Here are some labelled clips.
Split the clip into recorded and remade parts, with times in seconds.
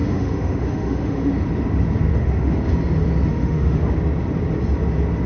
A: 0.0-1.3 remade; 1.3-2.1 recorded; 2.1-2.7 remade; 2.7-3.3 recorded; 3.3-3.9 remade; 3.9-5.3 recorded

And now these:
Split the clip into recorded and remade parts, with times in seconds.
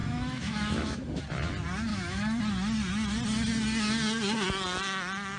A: 0.0-1.2 remade; 1.2-1.9 recorded; 1.9-2.4 remade; 2.4-5.4 recorded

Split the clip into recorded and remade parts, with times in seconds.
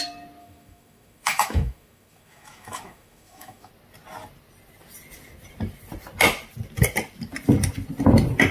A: 0.0-0.4 recorded; 0.4-3.7 remade; 3.7-8.5 recorded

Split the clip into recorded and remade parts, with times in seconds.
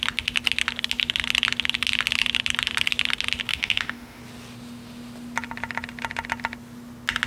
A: 0.0-3.5 recorded; 3.5-4.2 remade; 4.2-7.3 recorded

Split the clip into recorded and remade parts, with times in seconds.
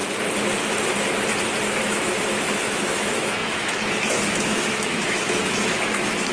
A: 0.0-1.8 recorded; 1.8-6.3 remade